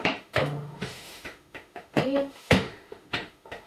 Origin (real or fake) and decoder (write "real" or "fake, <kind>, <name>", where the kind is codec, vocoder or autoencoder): fake, autoencoder, DAC-VAE